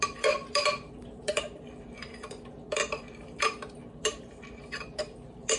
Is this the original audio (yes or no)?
no